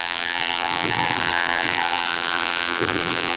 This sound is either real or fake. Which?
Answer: fake